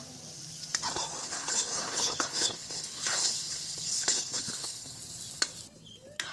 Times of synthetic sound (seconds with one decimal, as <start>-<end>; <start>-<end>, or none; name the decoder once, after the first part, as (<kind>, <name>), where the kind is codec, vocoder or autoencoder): 1.2-5.0 (codec, HILCodec)